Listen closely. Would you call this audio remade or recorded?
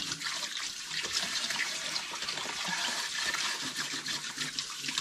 remade